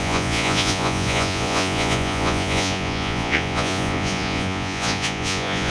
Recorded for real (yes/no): no